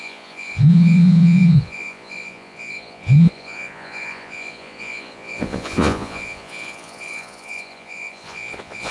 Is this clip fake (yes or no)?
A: yes